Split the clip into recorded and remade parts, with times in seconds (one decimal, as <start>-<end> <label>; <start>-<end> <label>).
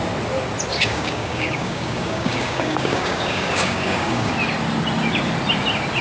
0.0-0.7 recorded; 0.7-4.3 remade; 4.3-6.0 recorded